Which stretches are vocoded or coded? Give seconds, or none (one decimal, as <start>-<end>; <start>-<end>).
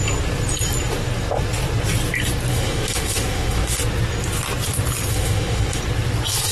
2.5-3.8; 5.1-5.8